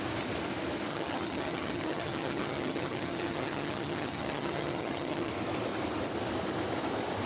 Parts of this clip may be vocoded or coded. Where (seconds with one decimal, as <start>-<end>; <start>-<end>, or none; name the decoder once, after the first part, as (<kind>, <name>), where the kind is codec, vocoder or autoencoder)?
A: 0.9-5.3 (vocoder, HiFi-GAN)